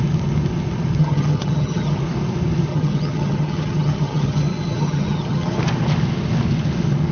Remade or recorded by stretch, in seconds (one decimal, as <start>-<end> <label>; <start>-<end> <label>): 0.0-1.0 recorded; 1.0-2.0 remade; 2.0-2.7 recorded; 2.7-5.6 remade; 5.6-7.1 recorded